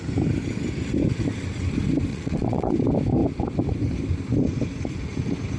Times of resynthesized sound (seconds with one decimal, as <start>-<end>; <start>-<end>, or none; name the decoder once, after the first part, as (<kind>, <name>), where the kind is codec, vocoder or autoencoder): 2.1-2.7 (vocoder, WaveNeXt)